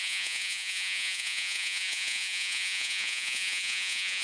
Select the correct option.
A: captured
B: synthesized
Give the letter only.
B